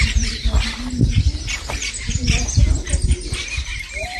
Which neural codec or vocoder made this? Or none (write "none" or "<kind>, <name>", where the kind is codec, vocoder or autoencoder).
vocoder, BigVGAN v2